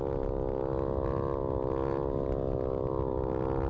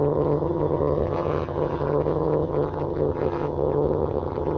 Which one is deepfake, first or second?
second